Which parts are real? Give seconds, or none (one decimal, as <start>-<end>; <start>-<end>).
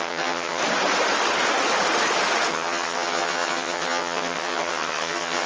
0.6-2.5